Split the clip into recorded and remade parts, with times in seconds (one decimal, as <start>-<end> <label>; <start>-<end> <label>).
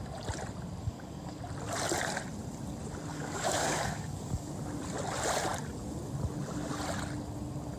0.0-0.8 recorded; 0.8-1.4 remade; 1.4-3.1 recorded; 3.1-4.5 remade; 4.5-7.8 recorded